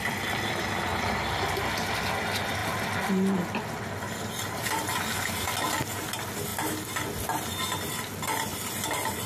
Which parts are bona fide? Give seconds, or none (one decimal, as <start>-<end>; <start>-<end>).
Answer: 0.0-9.3